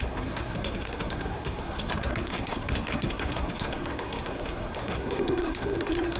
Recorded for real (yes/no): no